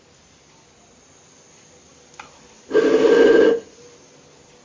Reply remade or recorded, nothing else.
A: recorded